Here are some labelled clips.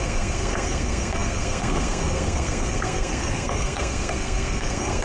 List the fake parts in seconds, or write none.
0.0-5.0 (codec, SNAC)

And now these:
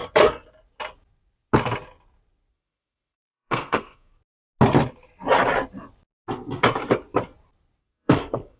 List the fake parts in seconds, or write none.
2.5-4.2 (codec, SNAC); 7.8-8.6

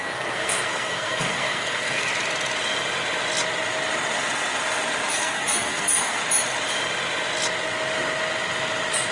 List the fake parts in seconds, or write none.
0.0-2.1 (codec, SNAC); 5.1-6.2

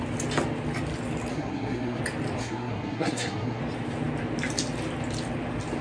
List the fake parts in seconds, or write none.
1.3-2.0 (codec, SNAC); 2.4-3.6

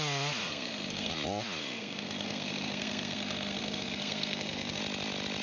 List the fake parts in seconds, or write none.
0.4-1.1 (codec, SNAC); 1.6-4.8

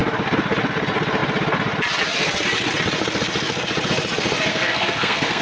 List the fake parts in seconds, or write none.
4.5-5.4 (codec, SNAC)

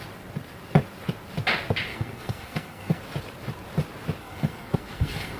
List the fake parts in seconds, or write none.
1.9-3.0 (codec, SNAC); 4.2-5.4

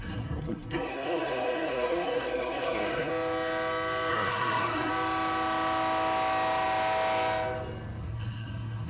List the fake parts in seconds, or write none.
0.0-3.1 (codec, SNAC); 4.1-4.9; 8.0-8.9